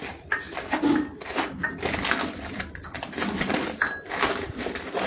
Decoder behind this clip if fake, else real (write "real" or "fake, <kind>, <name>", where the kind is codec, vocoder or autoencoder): real